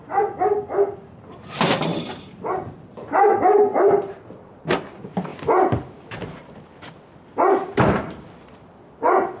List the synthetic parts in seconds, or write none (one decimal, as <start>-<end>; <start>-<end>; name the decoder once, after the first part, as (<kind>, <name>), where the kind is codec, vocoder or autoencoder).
1.9-3.1 (vocoder, BigVGAN v2); 3.7-4.6